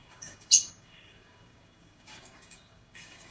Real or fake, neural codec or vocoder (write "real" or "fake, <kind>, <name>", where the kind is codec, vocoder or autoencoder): fake, codec, DAC